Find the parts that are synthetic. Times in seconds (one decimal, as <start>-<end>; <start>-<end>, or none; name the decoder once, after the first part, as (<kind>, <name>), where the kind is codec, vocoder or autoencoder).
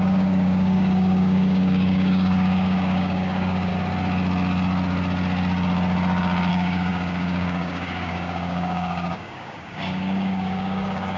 0.0-3.7 (codec, DAC); 6.5-11.2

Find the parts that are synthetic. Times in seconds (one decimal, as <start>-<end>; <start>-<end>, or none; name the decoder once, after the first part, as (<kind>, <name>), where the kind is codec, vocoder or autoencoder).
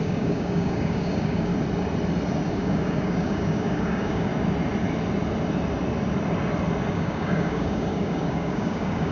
0.0-1.5 (codec, DAC); 2.5-4.3; 6.9-9.1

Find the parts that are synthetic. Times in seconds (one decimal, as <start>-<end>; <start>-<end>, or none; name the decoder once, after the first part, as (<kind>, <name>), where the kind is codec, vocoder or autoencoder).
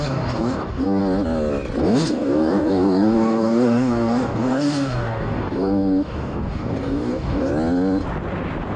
0.0-1.0 (codec, DAC); 1.8-7.5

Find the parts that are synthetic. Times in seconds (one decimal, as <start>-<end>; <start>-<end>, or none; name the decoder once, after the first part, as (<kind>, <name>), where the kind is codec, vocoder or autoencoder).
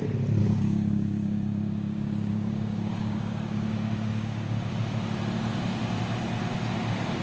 0.4-4.7 (codec, DAC)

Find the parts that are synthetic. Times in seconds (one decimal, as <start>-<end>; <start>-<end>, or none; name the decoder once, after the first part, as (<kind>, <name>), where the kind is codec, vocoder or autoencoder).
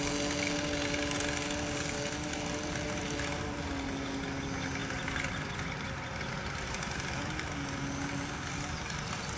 none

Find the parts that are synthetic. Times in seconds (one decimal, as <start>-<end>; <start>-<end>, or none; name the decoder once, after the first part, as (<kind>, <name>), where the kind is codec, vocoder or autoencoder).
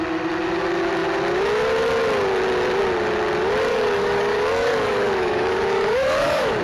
3.7-6.6 (codec, DAC)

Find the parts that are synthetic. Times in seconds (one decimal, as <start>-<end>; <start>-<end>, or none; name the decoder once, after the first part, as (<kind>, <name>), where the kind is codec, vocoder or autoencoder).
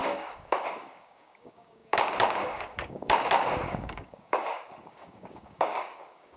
0.0-6.4 (codec, DAC)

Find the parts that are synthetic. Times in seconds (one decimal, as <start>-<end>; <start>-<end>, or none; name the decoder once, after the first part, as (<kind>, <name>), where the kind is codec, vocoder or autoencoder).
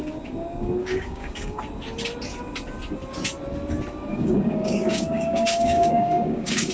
0.8-1.6 (codec, DAC); 4.1-6.7